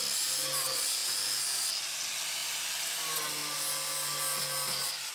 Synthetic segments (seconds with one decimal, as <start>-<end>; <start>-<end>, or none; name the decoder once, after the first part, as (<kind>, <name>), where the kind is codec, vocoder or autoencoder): 2.4-2.9 (vocoder, BigVGAN v2)